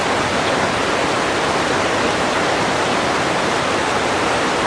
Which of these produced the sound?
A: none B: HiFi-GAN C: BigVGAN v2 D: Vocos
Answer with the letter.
A